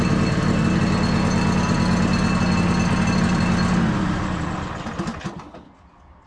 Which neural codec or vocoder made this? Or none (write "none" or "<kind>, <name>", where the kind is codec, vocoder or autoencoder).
none